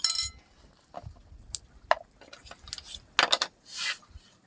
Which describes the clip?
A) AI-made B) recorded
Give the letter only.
B